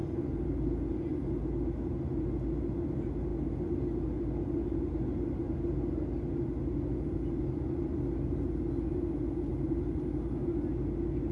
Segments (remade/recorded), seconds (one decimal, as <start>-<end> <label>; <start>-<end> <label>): 0.0-11.3 recorded

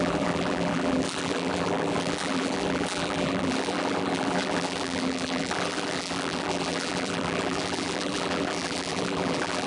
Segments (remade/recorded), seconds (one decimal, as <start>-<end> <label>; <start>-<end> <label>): 0.0-9.7 remade

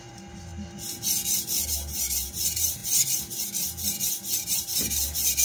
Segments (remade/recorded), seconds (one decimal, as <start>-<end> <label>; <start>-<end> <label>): 0.0-0.5 remade; 0.5-1.7 recorded; 1.7-2.8 remade; 2.8-4.5 recorded; 4.5-5.4 remade

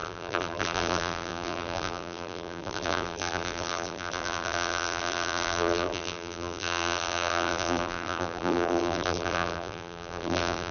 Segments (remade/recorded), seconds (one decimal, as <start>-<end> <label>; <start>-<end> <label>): 0.0-10.7 remade

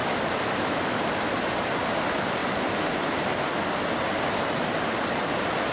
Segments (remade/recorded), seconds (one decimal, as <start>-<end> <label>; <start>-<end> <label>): 0.0-1.2 remade; 1.2-2.4 recorded; 2.4-3.5 remade; 3.5-5.7 recorded